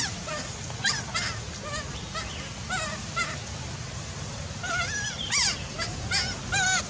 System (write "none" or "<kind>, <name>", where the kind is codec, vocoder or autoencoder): none